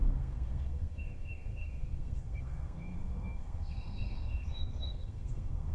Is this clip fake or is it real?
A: fake